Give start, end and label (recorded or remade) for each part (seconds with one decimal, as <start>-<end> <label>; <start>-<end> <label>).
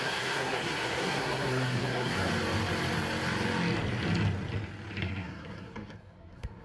0.0-2.3 remade; 2.3-5.0 recorded; 5.0-6.6 remade